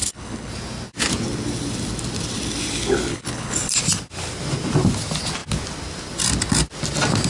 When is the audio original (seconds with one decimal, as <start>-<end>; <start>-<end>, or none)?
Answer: 0.5-3.1; 3.7-7.3